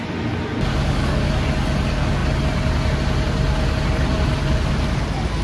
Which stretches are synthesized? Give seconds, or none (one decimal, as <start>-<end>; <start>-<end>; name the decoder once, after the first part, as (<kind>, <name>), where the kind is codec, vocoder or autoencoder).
0.7-1.3 (codec, DAC)